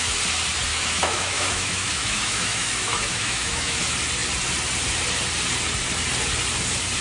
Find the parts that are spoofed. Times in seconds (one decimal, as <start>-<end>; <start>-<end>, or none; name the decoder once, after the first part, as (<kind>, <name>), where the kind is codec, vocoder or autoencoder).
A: 0.7-3.8 (autoencoder, DAC-VAE)